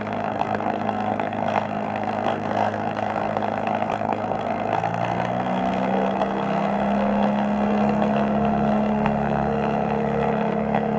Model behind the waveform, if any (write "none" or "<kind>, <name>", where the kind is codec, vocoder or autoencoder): codec, SNAC